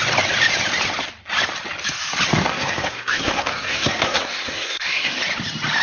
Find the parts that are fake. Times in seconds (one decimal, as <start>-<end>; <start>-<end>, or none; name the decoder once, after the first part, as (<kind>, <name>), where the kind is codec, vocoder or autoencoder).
2.5-5.2 (codec, SNAC)